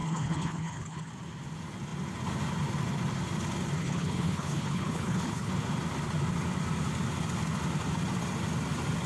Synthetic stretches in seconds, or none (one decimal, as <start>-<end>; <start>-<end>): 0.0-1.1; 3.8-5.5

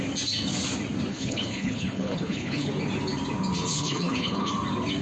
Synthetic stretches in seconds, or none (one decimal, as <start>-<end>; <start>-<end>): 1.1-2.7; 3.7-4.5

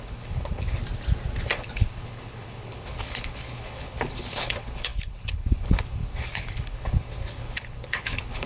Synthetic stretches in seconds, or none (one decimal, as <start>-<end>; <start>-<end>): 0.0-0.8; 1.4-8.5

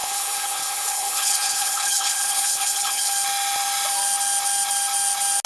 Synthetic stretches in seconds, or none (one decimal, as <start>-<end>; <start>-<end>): 0.0-3.1

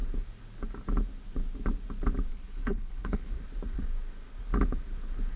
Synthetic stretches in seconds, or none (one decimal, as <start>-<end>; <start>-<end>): 2.3-3.3